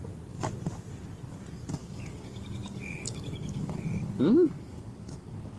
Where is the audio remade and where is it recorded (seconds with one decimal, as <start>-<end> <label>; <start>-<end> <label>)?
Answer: 0.0-1.8 recorded; 1.8-5.6 remade